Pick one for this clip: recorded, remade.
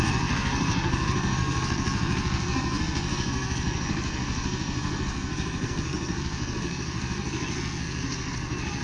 remade